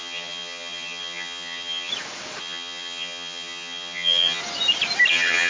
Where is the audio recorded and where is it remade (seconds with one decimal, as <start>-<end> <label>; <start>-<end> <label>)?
0.0-1.9 remade; 1.9-2.4 recorded; 2.4-4.4 remade; 4.4-5.1 recorded; 5.1-5.5 remade